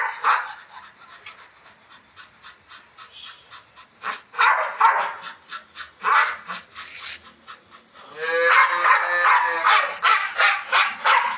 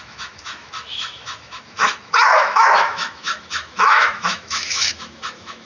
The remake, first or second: second